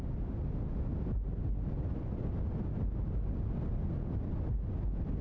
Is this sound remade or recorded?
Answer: recorded